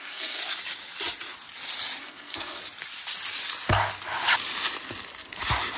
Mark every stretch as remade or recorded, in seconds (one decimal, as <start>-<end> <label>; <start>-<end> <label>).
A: 0.0-0.4 remade; 0.4-2.0 recorded; 2.0-2.6 remade; 2.6-5.8 recorded